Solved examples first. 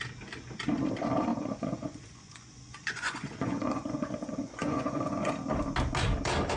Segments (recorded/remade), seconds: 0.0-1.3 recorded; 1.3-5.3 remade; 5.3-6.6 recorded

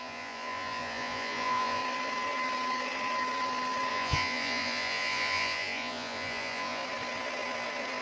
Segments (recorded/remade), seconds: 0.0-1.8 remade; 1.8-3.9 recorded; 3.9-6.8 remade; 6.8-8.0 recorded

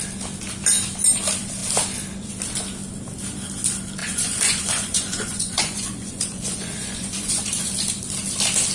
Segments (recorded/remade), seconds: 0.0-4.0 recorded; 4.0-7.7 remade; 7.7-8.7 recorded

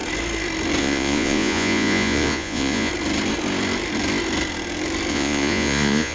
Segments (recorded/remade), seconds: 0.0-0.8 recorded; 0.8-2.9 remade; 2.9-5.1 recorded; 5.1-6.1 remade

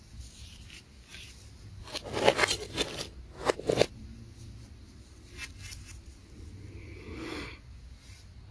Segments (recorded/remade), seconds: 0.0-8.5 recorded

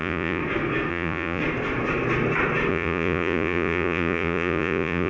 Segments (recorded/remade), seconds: 0.0-0.4 remade; 0.4-0.9 recorded; 0.9-1.4 remade; 1.4-2.7 recorded; 2.7-5.1 remade

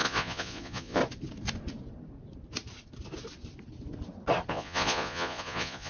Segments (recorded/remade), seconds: 0.0-1.0 remade; 1.0-4.5 recorded; 4.5-5.9 remade

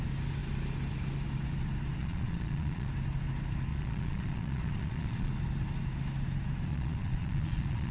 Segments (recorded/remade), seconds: 0.0-2.0 recorded; 2.0-2.9 remade; 2.9-3.7 recorded; 3.7-5.3 remade; 5.3-6.7 recorded; 6.7-7.9 remade